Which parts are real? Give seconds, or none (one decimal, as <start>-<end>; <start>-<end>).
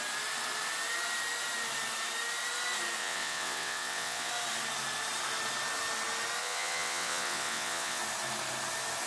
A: 0.0-3.0; 4.3-6.4; 8.0-9.1